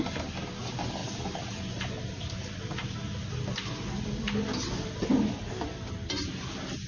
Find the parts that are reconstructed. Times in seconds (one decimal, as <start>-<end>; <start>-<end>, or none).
none